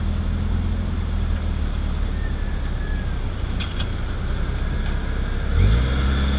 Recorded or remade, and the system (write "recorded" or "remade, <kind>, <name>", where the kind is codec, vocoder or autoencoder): recorded